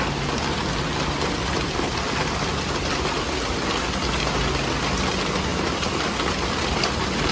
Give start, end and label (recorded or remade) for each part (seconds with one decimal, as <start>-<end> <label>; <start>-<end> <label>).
0.0-7.3 recorded